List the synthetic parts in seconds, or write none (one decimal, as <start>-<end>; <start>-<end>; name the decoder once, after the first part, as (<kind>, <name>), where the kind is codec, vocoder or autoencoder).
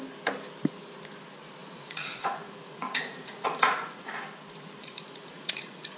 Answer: 1.6-4.1 (vocoder, Vocos); 4.8-6.0